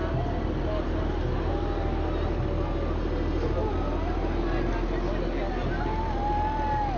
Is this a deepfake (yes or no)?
no